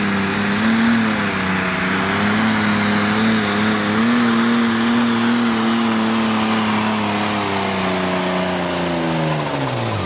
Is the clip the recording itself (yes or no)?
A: yes